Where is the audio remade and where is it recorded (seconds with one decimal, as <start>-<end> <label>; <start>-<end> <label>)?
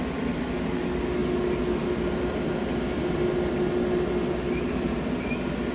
0.0-5.7 recorded